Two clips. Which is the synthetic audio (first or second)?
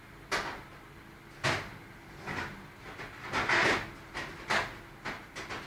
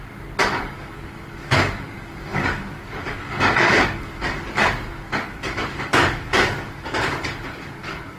second